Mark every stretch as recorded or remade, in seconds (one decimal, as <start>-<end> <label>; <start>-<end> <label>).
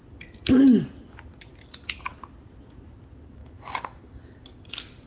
0.0-3.4 recorded; 3.4-4.2 remade; 4.2-5.1 recorded